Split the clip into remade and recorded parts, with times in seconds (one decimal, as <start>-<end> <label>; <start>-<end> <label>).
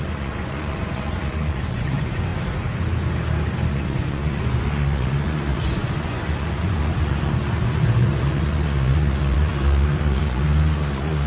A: 0.0-2.3 remade; 2.3-3.7 recorded; 3.7-11.3 remade